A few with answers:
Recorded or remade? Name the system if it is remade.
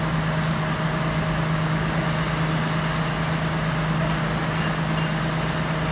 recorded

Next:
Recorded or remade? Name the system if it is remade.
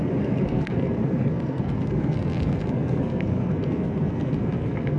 remade, codec, SNAC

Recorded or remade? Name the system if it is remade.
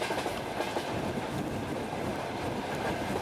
recorded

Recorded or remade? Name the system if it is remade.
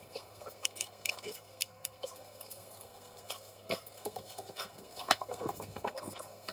remade, codec, SNAC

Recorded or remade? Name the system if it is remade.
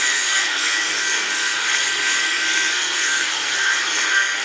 remade, codec, SNAC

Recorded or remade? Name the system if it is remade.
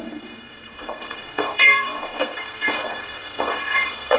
remade, codec, SNAC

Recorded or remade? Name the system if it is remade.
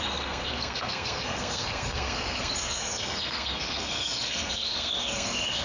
remade, codec, SNAC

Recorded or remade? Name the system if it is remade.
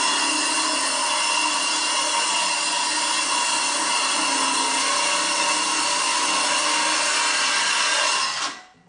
recorded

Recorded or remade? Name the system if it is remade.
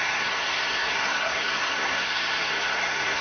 remade, codec, SNAC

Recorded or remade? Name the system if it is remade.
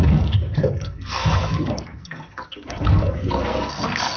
remade, codec, SNAC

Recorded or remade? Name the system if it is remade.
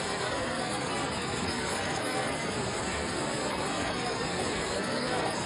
remade, codec, SNAC